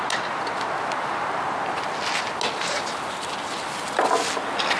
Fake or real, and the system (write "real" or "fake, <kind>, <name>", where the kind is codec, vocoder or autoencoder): real